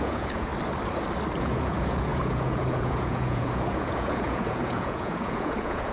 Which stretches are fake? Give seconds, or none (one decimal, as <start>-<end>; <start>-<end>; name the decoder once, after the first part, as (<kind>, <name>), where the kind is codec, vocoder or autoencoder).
0.0-0.5 (vocoder, Vocos); 1.4-5.9